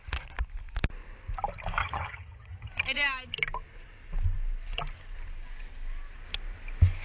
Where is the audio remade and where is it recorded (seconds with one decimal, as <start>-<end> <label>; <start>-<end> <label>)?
0.0-1.8 recorded; 1.8-2.7 remade; 2.7-7.0 recorded